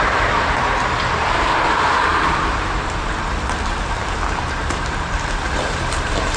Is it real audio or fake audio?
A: fake